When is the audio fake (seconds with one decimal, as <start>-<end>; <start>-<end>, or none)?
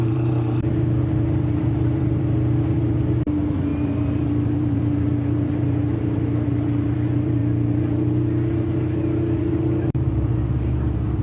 0.0-7.4; 8.5-11.2